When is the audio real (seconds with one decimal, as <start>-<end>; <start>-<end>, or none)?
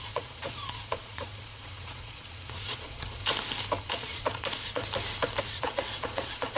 3.2-3.8; 4.8-5.4